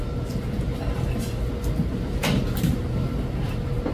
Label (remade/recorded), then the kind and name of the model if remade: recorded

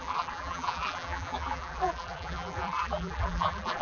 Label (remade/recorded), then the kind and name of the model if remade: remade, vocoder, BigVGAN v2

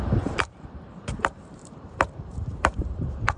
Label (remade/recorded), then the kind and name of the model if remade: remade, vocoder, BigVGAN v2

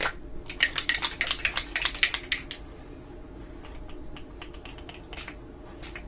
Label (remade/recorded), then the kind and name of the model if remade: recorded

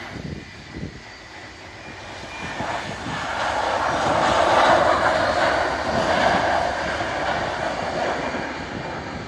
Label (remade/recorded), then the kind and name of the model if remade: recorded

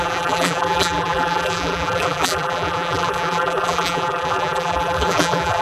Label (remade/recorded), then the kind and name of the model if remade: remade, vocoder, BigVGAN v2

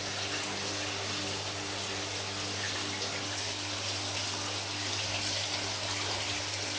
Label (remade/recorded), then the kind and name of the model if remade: recorded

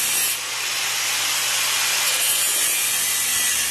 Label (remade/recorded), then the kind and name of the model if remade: recorded